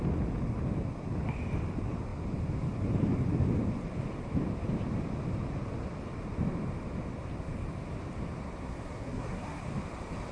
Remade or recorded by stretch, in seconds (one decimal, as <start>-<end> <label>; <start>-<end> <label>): 0.0-8.6 recorded; 8.6-9.6 remade; 9.6-10.3 recorded